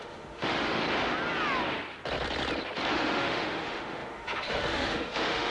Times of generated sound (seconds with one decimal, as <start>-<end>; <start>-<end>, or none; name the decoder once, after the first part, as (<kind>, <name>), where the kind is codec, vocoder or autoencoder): 0.0-0.8 (autoencoder, DAC-VAE); 2.9-5.5